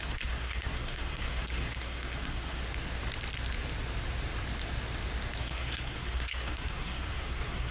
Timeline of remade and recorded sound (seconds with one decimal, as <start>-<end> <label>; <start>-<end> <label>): 0.0-2.6 remade; 2.6-5.4 recorded; 5.4-7.7 remade